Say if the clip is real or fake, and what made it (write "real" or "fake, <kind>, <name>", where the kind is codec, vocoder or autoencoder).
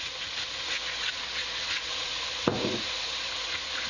fake, vocoder, Vocos